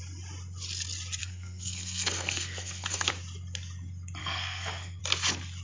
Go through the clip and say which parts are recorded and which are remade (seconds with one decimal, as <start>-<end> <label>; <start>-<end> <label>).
0.0-1.2 recorded; 1.2-3.1 remade; 3.1-4.2 recorded; 4.2-5.0 remade; 5.0-5.6 recorded